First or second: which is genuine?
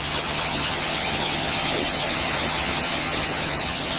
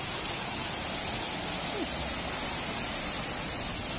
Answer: second